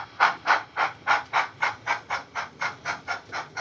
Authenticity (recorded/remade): recorded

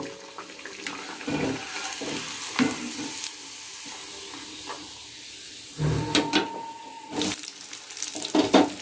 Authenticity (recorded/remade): recorded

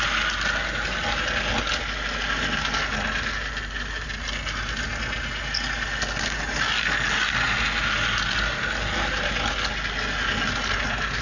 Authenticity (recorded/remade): recorded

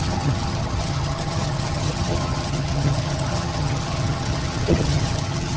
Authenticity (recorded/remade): remade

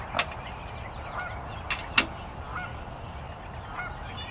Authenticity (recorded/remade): recorded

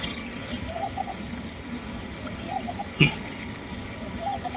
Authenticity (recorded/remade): remade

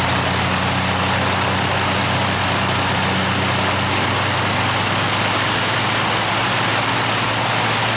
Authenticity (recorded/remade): recorded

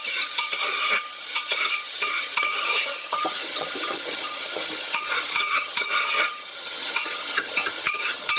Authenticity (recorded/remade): remade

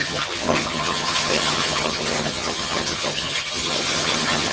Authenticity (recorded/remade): remade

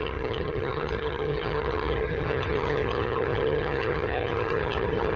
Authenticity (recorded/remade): remade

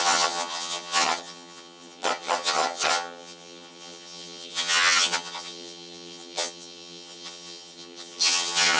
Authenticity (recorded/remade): remade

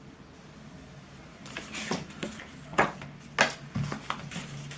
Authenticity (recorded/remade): recorded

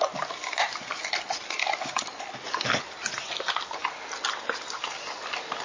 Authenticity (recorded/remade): recorded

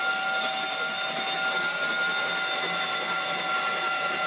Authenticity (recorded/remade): recorded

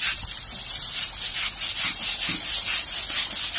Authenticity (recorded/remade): recorded